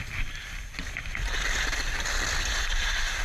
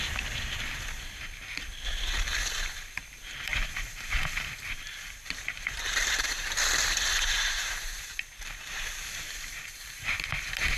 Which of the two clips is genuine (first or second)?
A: first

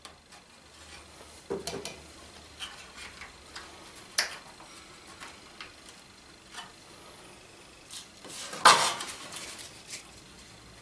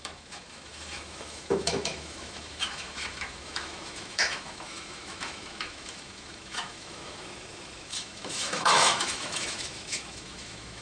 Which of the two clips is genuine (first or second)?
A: first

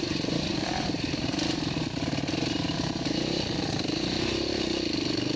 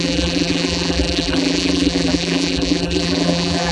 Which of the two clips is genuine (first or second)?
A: first